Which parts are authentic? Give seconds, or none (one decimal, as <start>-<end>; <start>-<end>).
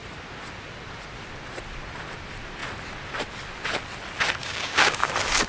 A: 0.0-4.4; 5.1-5.5